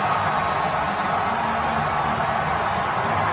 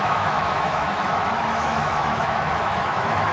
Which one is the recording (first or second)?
first